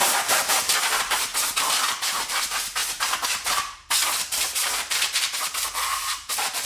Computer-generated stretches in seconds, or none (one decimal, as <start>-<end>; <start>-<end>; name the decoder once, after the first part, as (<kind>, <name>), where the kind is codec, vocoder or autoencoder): 0.0-1.3 (vocoder, BigVGAN v2); 1.9-2.8; 4.2-6.7